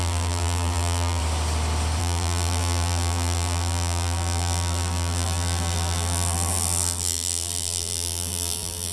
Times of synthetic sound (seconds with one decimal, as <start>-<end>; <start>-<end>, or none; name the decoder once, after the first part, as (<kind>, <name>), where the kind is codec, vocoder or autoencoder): 0.0-1.2 (vocoder, BigVGAN v2); 2.0-8.9

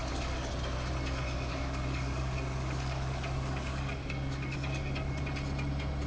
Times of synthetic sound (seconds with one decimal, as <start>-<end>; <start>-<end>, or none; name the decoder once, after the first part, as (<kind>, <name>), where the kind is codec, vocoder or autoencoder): 0.0-0.5 (codec, DAC); 1.5-5.2

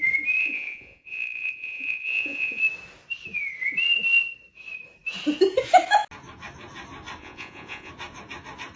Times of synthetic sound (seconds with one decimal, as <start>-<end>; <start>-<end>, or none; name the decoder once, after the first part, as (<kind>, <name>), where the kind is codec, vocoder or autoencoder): 0.4-2.6 (vocoder, Vocos); 7.2-7.9